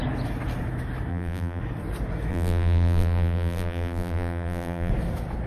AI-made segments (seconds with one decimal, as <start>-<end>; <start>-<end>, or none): 1.1-1.6; 2.3-4.9